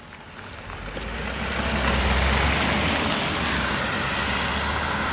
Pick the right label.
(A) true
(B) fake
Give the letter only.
A